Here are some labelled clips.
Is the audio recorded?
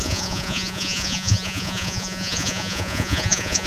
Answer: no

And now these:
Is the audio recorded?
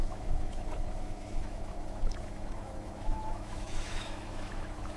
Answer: no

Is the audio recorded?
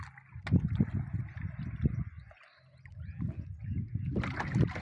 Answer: yes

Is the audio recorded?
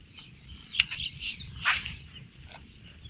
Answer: yes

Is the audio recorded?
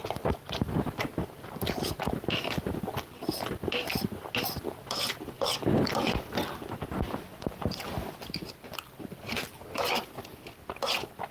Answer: yes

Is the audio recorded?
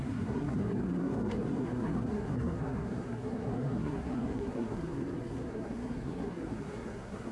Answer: no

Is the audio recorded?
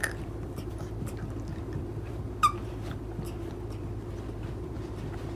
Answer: no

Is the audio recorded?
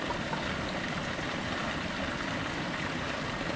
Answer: yes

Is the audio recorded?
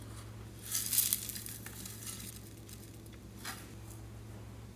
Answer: yes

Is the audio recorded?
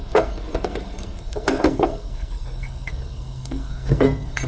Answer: no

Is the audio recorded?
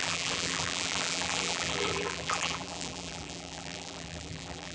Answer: no